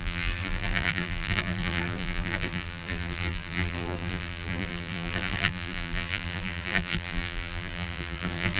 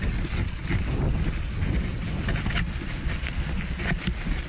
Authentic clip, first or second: second